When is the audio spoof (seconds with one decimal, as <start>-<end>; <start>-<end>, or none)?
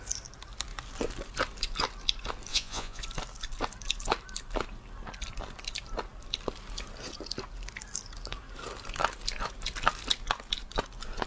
2.5-3.0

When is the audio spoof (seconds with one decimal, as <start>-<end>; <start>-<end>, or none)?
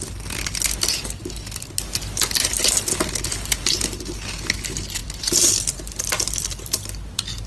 5.0-7.5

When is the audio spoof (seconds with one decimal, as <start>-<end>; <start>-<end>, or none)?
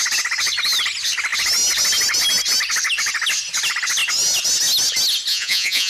5.3-5.9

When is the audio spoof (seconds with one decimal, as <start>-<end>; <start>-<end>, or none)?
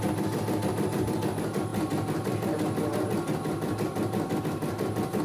none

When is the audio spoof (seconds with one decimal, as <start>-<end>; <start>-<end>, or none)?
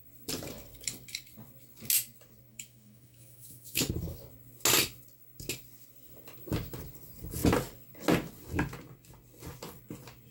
2.5-3.9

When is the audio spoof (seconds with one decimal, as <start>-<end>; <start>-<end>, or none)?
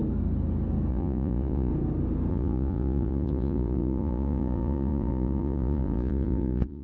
0.9-1.7; 2.3-6.8